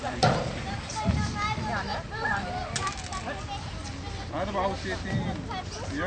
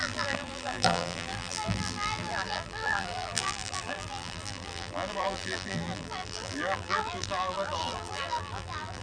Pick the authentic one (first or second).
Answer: first